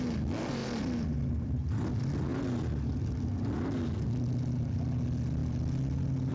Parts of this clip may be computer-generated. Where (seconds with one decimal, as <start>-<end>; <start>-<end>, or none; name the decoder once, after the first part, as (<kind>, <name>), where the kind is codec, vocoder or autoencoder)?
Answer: none

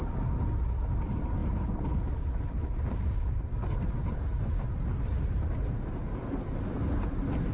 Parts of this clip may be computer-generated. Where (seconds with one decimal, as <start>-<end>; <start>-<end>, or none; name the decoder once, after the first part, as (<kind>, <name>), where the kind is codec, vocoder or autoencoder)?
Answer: none